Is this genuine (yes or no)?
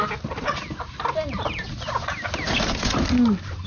yes